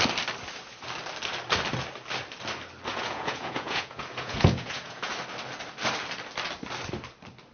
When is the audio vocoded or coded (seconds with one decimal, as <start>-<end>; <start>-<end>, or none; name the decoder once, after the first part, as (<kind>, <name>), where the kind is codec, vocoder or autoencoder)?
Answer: 2.9-5.1 (vocoder, Vocos)

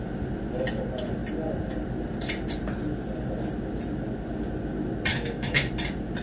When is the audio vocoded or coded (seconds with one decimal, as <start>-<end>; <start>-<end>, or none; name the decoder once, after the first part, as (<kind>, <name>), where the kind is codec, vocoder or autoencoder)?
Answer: 5.1-5.7 (autoencoder, DAC-VAE)

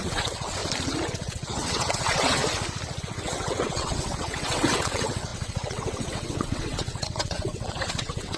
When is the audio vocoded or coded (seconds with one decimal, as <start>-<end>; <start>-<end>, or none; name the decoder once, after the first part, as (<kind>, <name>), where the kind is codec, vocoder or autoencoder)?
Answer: 0.0-0.6 (vocoder, WaveNeXt); 1.1-2.4; 3.0-8.4

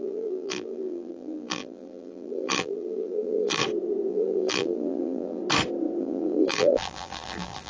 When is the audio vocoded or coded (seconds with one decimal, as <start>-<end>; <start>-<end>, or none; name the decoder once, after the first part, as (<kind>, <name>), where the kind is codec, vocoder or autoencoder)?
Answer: 0.0-3.6 (vocoder, BigVGAN v2); 4.1-5.4; 6.0-7.7

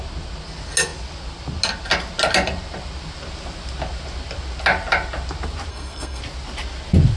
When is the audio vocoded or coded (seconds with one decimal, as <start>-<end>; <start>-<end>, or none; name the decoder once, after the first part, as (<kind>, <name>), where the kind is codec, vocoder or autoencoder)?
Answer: 5.7-6.2 (codec, SNAC)

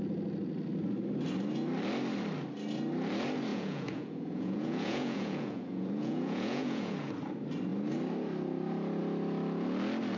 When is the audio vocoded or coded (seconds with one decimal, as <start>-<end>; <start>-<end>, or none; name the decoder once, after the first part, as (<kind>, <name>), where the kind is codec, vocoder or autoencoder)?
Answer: 3.5-7.1 (vocoder, Vocos)

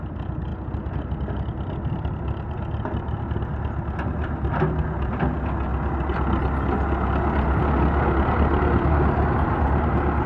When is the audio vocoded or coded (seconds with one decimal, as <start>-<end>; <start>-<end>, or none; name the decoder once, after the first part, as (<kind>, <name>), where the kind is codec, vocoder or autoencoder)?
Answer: none